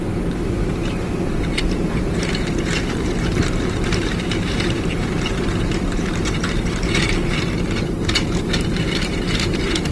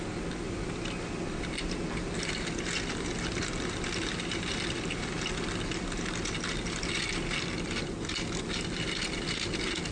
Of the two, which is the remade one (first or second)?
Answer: first